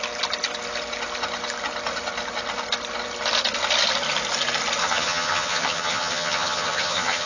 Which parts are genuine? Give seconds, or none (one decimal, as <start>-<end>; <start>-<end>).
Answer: 0.0-4.8